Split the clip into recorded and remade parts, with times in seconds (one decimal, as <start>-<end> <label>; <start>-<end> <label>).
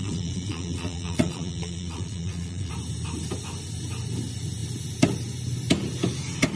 0.0-2.7 remade; 2.7-6.6 recorded